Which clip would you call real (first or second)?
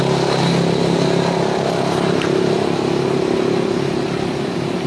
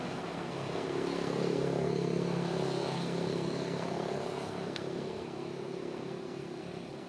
first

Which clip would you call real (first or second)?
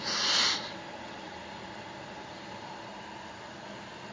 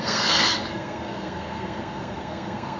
first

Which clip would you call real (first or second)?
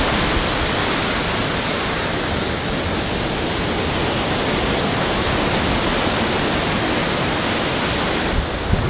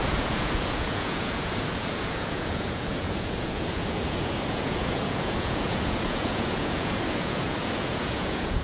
first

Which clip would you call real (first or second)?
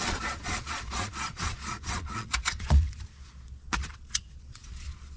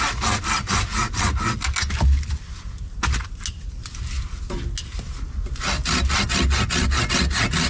second